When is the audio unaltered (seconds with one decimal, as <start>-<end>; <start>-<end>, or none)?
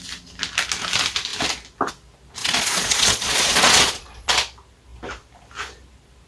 0.0-2.4; 4.3-6.3